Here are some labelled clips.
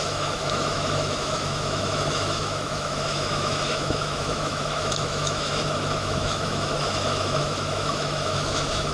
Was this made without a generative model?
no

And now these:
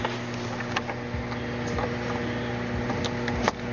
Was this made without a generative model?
yes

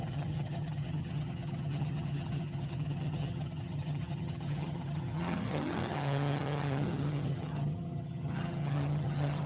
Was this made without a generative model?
no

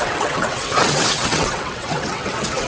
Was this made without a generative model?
no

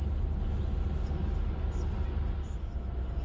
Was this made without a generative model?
yes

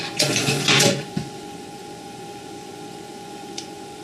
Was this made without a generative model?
no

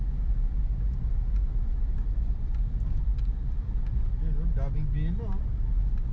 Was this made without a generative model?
yes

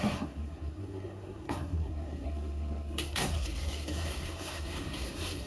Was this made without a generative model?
no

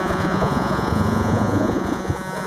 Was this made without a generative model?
no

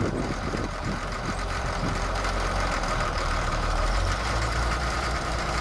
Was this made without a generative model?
no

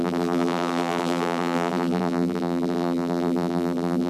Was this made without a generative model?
no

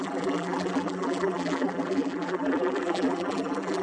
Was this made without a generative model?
no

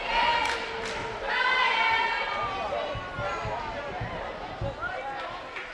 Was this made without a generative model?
yes